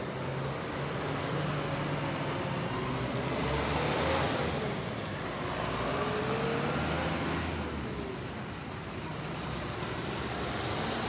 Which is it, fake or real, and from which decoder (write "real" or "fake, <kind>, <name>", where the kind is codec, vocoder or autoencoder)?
real